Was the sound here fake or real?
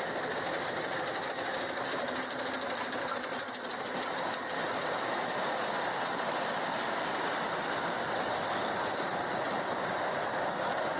real